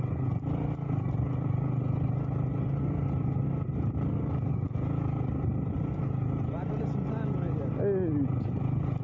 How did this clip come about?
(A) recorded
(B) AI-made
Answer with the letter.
A